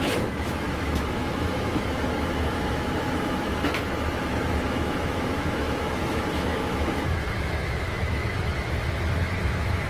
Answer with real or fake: fake